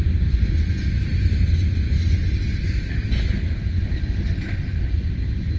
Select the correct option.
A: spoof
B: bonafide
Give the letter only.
B